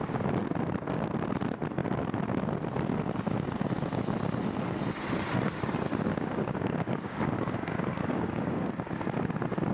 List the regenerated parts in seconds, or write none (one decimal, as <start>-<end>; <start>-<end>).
6.1-8.7